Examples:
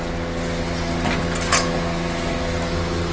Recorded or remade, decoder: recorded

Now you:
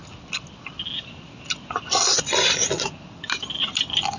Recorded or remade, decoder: recorded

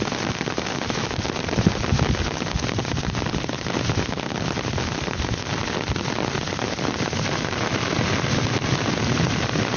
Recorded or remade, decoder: recorded